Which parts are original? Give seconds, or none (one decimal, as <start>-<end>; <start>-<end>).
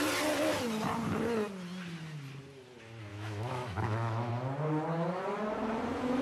0.0-3.1; 4.3-6.2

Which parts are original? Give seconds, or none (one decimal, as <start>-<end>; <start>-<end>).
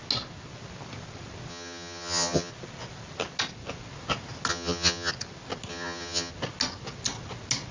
0.0-1.5; 2.5-4.5; 5.1-5.7; 6.3-7.7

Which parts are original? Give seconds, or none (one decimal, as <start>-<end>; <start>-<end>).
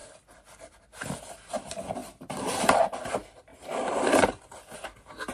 0.0-2.0; 3.1-3.5; 4.4-5.3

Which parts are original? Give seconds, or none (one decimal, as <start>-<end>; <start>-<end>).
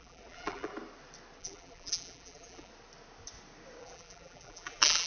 0.7-1.4; 2.7-3.8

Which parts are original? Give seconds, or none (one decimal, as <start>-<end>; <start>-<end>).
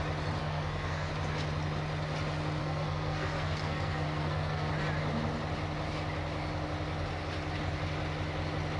0.0-0.4; 1.1-2.6; 4.7-8.8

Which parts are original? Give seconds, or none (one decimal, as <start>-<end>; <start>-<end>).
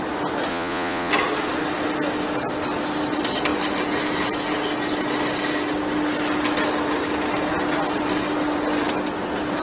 0.0-0.5; 1.1-9.6